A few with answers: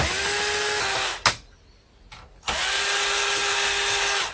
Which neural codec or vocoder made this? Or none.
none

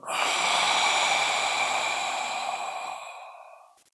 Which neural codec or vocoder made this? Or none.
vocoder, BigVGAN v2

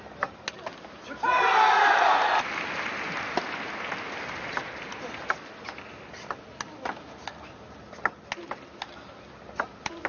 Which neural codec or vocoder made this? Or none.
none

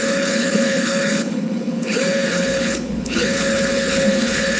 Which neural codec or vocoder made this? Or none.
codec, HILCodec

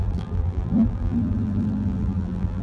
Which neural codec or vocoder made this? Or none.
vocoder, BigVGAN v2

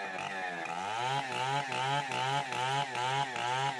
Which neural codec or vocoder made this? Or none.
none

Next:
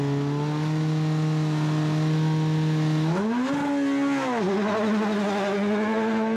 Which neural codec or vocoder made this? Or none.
none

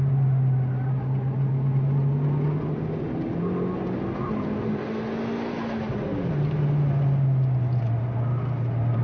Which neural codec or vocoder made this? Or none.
none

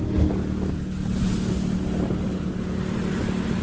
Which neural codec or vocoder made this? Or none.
none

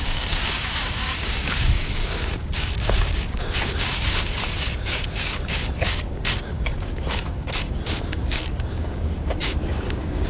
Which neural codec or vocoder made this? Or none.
codec, DAC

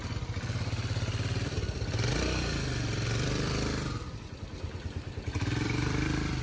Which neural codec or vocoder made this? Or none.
vocoder, BigVGAN v2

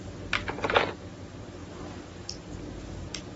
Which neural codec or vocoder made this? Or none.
none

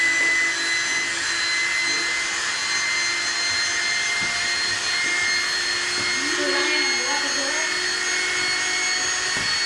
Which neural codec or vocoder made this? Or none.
none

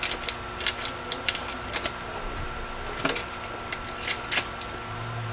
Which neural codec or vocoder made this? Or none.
none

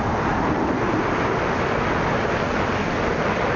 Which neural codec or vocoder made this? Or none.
none